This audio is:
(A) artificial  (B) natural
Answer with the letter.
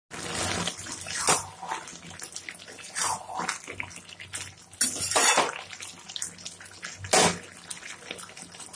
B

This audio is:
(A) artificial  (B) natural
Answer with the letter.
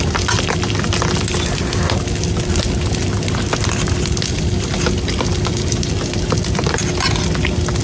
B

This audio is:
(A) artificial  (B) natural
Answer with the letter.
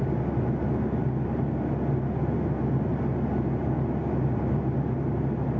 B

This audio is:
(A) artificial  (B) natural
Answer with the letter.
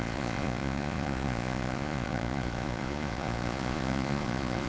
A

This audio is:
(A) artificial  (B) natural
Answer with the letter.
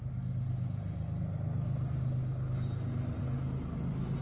B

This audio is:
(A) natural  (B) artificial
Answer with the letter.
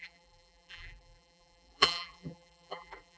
B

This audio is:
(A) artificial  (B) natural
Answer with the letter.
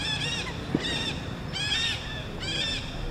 B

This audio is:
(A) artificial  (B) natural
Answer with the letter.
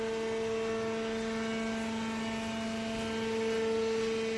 B